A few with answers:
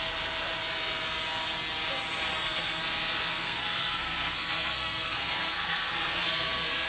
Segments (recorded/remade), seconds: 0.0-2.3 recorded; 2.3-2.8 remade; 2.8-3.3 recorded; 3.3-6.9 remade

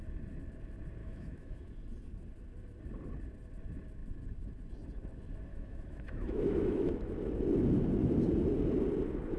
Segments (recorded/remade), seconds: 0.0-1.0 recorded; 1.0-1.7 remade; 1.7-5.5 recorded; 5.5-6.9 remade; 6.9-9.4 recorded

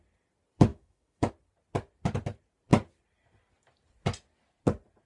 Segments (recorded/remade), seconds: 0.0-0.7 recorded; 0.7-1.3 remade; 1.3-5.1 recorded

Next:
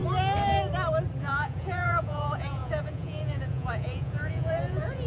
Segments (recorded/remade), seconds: 0.0-1.2 recorded; 1.2-5.1 remade

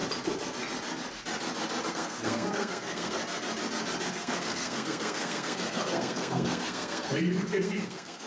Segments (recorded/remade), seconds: 0.0-1.9 recorded; 1.9-3.2 remade; 3.2-4.1 recorded; 4.1-8.3 remade

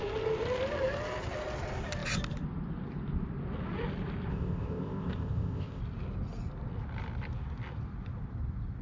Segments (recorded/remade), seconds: 0.0-4.3 recorded; 4.3-5.8 remade; 5.8-8.8 recorded